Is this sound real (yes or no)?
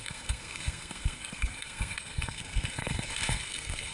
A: no